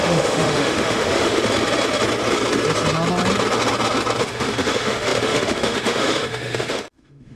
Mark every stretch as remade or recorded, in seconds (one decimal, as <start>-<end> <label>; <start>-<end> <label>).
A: 0.0-1.4 remade; 1.4-4.2 recorded; 4.2-7.4 remade